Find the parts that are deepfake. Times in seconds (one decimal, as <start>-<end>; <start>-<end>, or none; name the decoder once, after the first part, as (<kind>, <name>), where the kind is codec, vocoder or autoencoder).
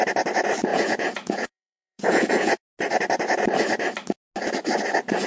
0.7-2.6 (vocoder, Vocos)